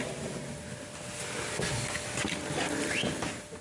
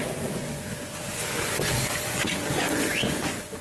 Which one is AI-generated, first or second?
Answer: second